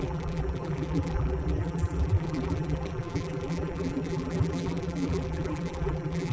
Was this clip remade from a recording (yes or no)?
yes